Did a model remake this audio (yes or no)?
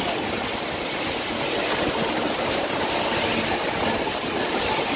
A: no